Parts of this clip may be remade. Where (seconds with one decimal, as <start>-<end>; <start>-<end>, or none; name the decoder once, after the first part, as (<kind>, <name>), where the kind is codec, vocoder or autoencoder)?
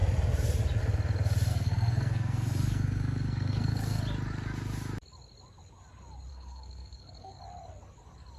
1.5-4.0 (codec, SNAC); 6.3-7.4